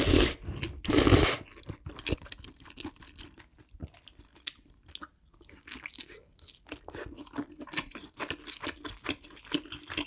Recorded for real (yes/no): yes